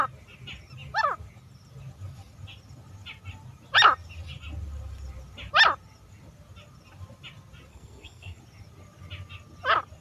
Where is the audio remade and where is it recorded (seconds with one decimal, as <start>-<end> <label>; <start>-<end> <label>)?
0.0-7.7 recorded; 7.7-8.4 remade; 8.4-10.0 recorded

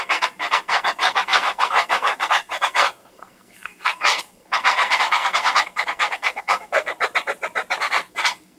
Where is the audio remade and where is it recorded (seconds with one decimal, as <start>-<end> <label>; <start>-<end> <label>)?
0.0-6.9 remade; 6.9-7.8 recorded; 7.8-8.6 remade